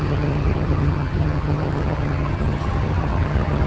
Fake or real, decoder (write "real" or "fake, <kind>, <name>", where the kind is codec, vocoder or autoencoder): fake, vocoder, HiFi-GAN